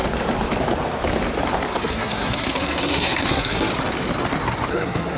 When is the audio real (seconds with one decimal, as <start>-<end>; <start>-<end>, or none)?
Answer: 0.0-1.8; 3.7-4.7